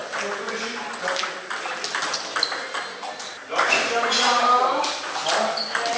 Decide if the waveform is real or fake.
real